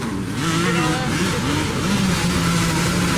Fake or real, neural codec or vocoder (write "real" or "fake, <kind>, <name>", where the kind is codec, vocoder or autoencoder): real